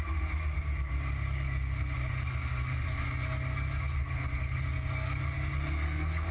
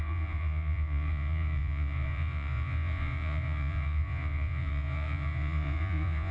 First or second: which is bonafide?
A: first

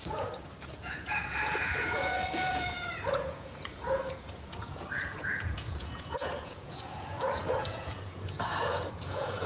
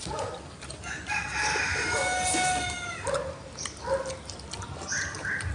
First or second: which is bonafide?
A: second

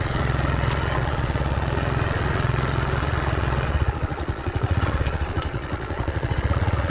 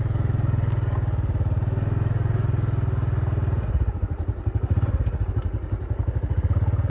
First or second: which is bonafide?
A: second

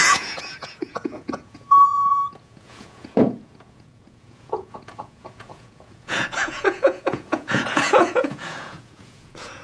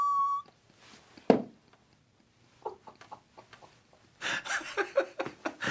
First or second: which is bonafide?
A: second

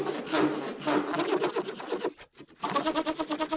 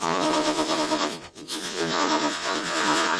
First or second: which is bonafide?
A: first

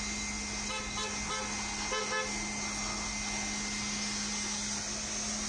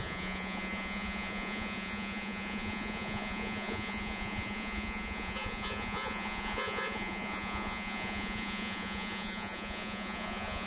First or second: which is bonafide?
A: first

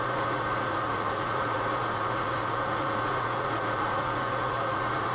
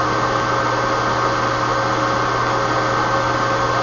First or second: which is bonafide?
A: second